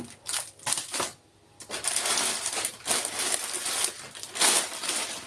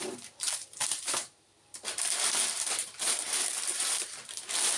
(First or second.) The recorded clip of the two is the first